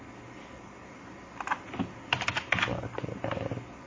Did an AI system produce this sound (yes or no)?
no